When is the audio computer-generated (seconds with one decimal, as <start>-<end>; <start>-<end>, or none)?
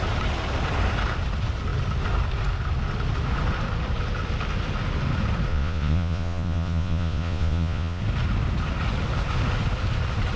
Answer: 5.5-8.0